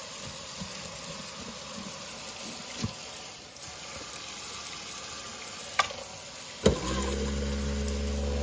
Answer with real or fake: real